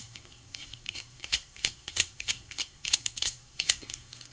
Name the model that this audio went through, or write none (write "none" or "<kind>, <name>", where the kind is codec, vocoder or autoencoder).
codec, SNAC